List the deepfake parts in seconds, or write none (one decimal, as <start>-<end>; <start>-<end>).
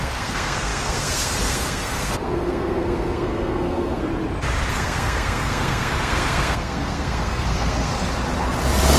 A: 0.0-4.1; 4.7-7.9